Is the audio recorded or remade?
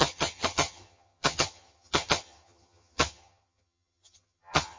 remade